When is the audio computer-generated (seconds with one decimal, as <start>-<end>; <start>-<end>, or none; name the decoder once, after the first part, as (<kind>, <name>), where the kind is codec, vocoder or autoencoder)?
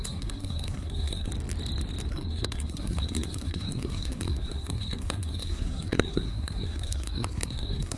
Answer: 0.0-1.3 (codec, SNAC); 2.1-8.0